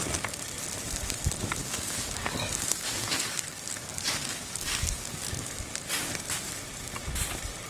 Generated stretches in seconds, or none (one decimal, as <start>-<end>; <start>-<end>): 1.6-6.1